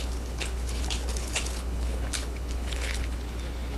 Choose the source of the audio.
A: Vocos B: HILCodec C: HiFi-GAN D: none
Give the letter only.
B